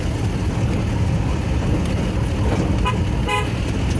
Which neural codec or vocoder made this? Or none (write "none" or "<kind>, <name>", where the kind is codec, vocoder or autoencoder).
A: none